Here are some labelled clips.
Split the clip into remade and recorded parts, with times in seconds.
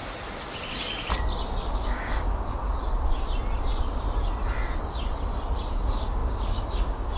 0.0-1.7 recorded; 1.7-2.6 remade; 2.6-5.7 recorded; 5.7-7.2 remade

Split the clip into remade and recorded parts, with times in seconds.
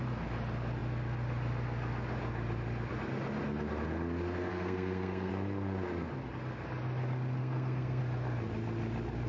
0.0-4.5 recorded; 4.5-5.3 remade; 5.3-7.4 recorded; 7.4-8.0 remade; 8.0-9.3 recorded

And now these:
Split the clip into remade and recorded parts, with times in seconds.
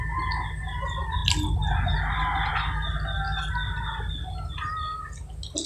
0.0-5.7 recorded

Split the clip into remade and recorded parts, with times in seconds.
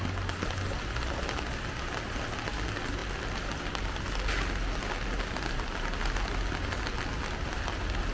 0.0-8.1 recorded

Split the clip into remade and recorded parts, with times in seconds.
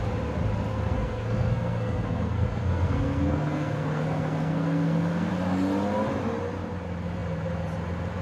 0.0-0.7 recorded; 0.7-5.3 remade; 5.3-8.2 recorded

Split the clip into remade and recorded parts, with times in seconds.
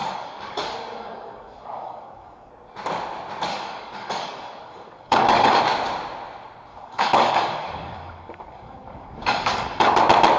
0.0-2.5 remade; 2.5-3.5 recorded; 3.5-5.6 remade; 5.6-6.7 recorded; 6.7-10.0 remade; 10.0-10.4 recorded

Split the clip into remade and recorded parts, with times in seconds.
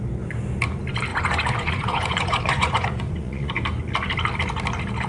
0.0-1.1 recorded; 1.1-3.5 remade; 3.5-5.1 recorded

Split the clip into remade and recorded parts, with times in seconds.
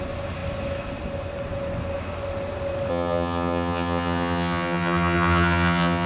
0.0-2.9 recorded; 2.9-6.1 remade